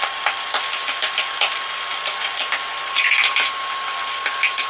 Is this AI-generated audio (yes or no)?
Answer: no